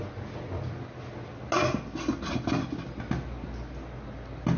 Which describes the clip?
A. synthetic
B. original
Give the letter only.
B